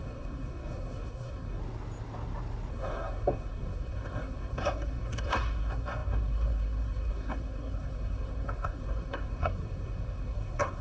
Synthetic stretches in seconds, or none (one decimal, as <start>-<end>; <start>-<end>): 0.0-1.6; 2.7-10.8